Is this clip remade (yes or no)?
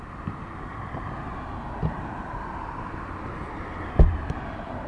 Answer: yes